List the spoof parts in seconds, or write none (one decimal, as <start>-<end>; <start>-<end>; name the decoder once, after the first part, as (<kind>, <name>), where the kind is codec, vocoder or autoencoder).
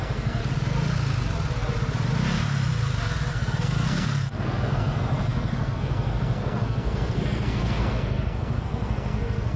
0.0-0.4 (codec, SNAC); 3.3-9.6